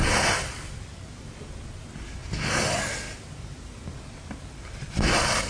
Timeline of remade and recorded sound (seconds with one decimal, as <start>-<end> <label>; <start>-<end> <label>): 0.0-5.5 recorded

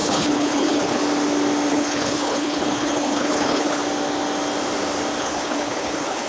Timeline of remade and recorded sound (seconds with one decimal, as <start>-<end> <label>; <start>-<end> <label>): 0.0-1.0 remade; 1.0-1.7 recorded; 1.7-3.8 remade; 3.8-5.2 recorded; 5.2-6.3 remade

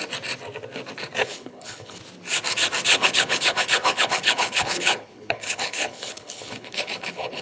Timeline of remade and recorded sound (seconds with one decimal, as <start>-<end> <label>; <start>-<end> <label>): 0.0-1.2 recorded; 1.2-2.0 remade; 2.0-2.9 recorded; 2.9-7.4 remade

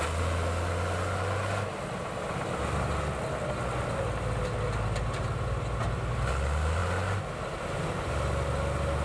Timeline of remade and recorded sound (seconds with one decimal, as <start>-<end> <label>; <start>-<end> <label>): 0.0-9.0 recorded

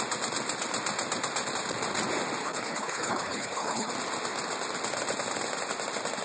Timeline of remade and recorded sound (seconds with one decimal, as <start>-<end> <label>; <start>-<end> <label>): 0.0-2.4 recorded; 2.4-3.9 remade; 3.9-6.2 recorded

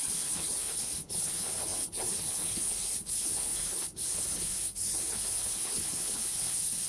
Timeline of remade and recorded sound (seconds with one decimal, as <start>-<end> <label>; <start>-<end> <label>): 0.0-6.9 remade

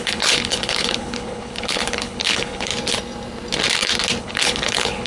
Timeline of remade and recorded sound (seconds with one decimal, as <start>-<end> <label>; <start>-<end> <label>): 0.0-2.7 remade; 2.7-4.2 recorded; 4.2-5.1 remade